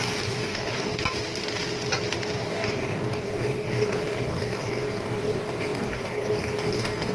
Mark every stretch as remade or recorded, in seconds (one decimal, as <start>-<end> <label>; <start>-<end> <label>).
0.0-0.9 remade; 0.9-2.4 recorded; 2.4-7.1 remade